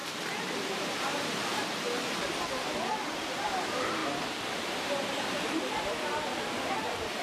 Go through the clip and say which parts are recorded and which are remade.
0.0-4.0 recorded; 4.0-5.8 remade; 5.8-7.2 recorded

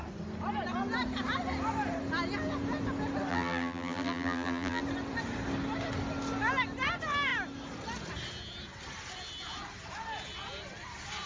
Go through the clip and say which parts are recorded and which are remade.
0.0-3.3 recorded; 3.3-4.8 remade; 4.8-11.3 recorded

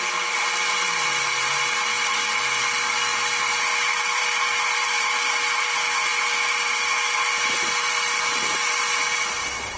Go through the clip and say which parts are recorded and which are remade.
0.0-6.1 remade; 6.1-7.9 recorded; 7.9-9.8 remade

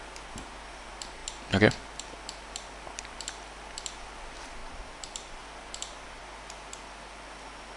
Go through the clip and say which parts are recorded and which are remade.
0.0-4.6 recorded; 4.6-5.4 remade; 5.4-7.8 recorded

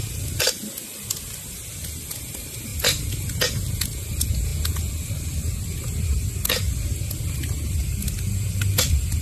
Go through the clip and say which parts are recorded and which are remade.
0.0-9.2 recorded

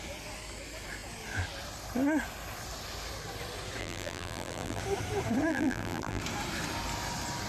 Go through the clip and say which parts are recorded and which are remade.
0.0-3.8 recorded; 3.8-4.8 remade; 4.8-5.5 recorded; 5.5-6.2 remade; 6.2-7.5 recorded

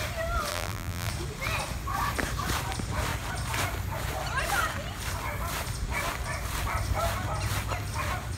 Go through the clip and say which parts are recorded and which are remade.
0.0-0.5 recorded; 0.5-1.1 remade; 1.1-8.4 recorded